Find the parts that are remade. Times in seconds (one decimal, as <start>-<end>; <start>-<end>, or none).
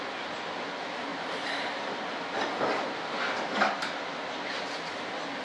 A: none